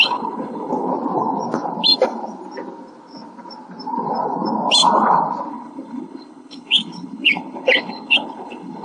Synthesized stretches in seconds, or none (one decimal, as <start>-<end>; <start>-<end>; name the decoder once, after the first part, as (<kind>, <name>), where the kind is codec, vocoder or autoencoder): 0.0-0.9 (codec, HILCodec); 5.5-8.8